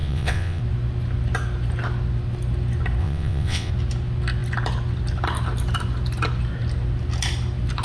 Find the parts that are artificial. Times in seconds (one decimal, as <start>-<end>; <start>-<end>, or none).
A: 0.0-0.6; 3.0-3.7